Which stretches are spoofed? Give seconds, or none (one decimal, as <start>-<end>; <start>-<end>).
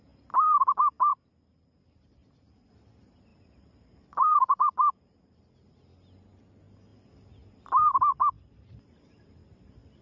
1.1-2.7; 3.3-5.4